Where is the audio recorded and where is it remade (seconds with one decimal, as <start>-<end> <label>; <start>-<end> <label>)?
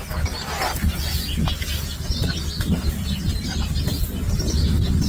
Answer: 0.0-3.3 recorded; 3.3-4.2 remade; 4.2-5.1 recorded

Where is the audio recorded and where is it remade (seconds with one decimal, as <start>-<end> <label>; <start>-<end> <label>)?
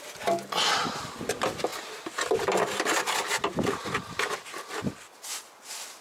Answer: 0.0-6.0 recorded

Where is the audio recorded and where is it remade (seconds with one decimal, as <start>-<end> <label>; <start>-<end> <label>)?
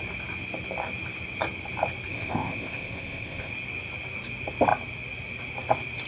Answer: 0.0-2.1 recorded; 2.1-3.5 remade; 3.5-6.1 recorded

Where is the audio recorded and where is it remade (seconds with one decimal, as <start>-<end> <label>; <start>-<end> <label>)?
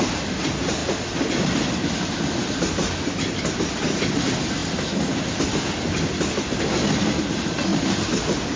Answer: 0.0-8.6 recorded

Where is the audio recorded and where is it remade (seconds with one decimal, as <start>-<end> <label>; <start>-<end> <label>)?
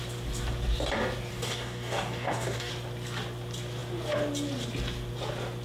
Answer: 0.0-1.3 recorded; 1.3-2.7 remade; 2.7-5.6 recorded